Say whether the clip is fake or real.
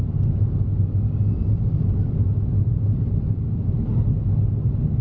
real